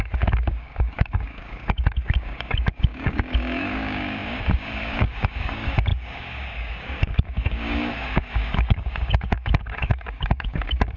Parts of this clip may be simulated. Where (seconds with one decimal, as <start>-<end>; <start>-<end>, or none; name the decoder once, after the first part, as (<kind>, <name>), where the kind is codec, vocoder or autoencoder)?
0.0-11.0 (codec, DAC)